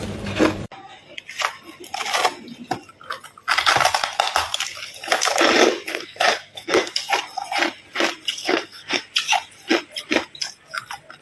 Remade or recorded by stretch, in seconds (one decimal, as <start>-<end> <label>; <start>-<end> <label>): 0.0-5.9 recorded; 5.9-6.9 remade; 6.9-8.4 recorded; 8.4-9.0 remade; 9.0-11.2 recorded